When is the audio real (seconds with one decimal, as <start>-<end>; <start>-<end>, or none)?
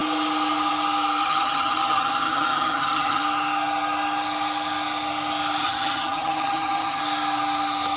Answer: 0.0-1.2; 3.2-5.6; 7.0-8.0